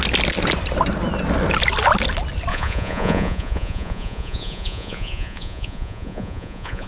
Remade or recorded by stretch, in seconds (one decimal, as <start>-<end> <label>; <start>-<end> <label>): 0.0-2.5 recorded; 2.5-6.9 remade